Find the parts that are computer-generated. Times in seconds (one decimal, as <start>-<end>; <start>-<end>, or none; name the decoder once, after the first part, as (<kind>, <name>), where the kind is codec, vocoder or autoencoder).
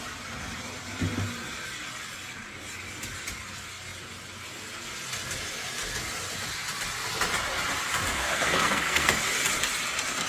8.2-9.2 (codec, SNAC)